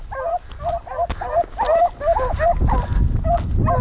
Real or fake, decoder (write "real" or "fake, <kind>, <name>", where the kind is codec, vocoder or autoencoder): real